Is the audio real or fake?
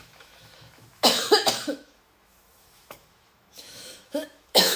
fake